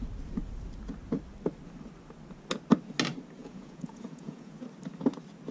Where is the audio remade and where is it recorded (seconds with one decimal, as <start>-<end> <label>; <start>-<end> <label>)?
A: 0.0-3.4 recorded; 3.4-4.5 remade; 4.5-5.5 recorded